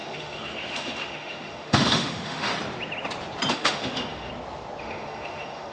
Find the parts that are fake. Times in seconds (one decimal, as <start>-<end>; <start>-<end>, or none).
0.0-2.5; 3.5-4.3; 4.8-5.7